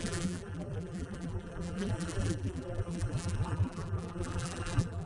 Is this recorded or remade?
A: remade